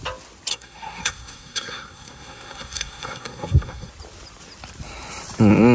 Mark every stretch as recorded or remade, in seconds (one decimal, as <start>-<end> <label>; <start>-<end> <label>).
0.0-0.5 recorded; 0.5-3.9 remade; 3.9-5.7 recorded